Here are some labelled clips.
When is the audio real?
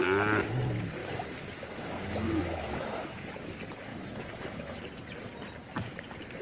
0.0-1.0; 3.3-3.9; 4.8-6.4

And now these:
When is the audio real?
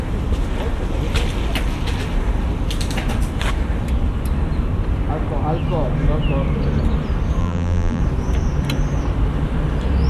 0.0-7.4; 8.0-10.1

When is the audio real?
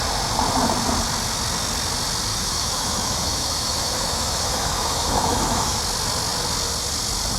0.0-2.3; 5.8-7.4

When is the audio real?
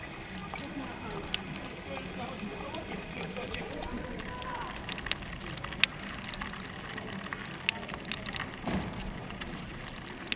0.0-2.5; 3.9-9.0; 9.8-10.4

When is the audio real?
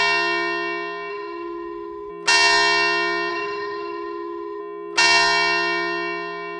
0.0-1.1; 2.1-3.3; 4.6-6.6